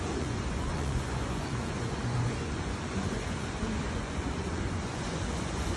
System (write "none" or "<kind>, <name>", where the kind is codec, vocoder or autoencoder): vocoder, Vocos